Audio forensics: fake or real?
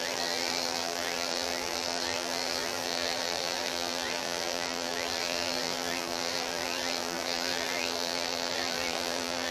fake